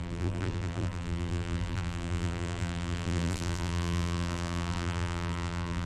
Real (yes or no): no